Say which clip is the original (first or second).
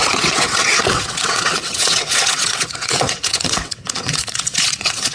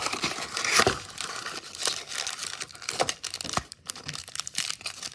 second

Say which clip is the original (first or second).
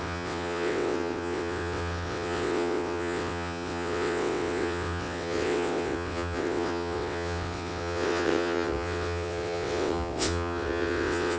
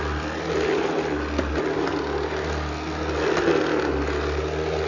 second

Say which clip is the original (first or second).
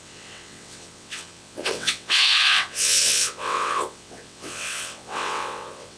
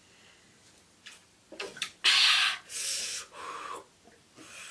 second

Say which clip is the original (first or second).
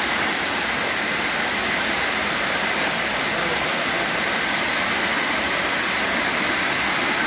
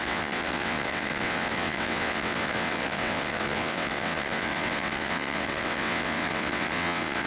first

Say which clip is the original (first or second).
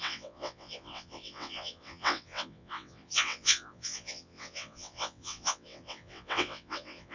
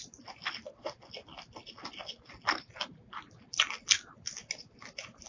second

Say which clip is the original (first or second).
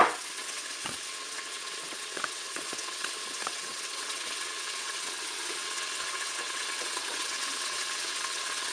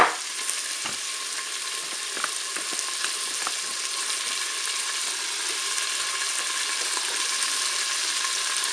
second